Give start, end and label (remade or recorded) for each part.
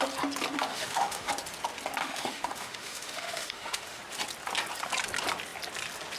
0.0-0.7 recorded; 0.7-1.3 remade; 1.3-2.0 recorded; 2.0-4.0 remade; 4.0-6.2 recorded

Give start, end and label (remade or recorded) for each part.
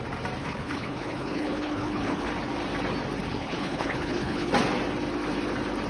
0.0-0.4 recorded; 0.4-2.3 remade; 2.3-3.3 recorded; 3.3-4.5 remade; 4.5-5.9 recorded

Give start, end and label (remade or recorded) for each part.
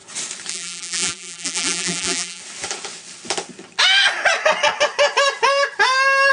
0.0-0.5 recorded; 0.5-2.4 remade; 2.4-6.3 recorded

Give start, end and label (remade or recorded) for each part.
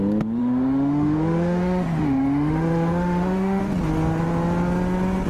0.0-0.4 recorded; 0.4-3.6 remade; 3.6-5.3 recorded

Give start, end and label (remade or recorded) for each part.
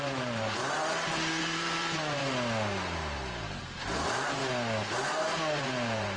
0.0-0.8 remade; 0.8-1.4 recorded; 1.4-2.2 remade; 2.2-3.6 recorded; 3.6-4.4 remade; 4.4-5.6 recorded; 5.6-6.2 remade